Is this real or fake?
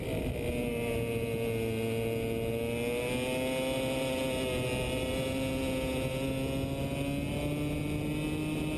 real